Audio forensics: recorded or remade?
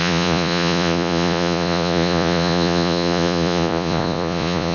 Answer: remade